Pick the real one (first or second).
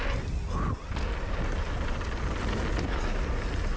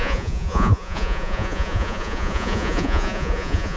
first